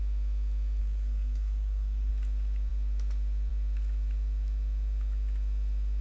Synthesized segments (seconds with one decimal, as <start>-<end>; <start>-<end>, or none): 0.8-2.1